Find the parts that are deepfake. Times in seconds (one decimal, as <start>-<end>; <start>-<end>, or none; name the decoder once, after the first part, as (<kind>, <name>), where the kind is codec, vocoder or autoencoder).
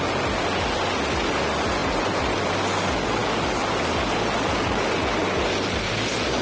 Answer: 1.8-2.4 (vocoder, BigVGAN v2)